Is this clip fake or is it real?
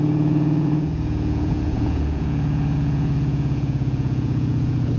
fake